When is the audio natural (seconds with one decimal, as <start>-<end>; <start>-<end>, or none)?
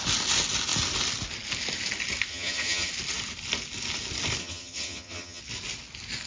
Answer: 0.0-2.3; 2.9-4.4; 5.4-6.3